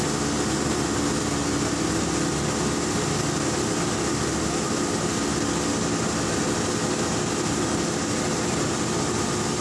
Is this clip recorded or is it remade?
recorded